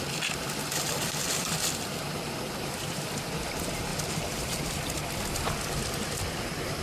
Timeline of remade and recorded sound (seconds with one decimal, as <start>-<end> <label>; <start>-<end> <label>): 0.0-3.9 recorded; 3.9-4.6 remade; 4.6-6.8 recorded